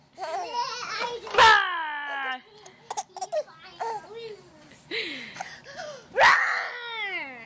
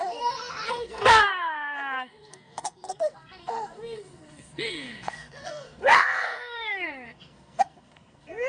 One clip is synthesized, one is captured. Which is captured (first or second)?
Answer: first